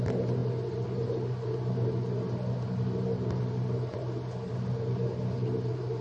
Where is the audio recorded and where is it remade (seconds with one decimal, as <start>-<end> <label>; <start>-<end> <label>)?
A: 0.0-6.0 recorded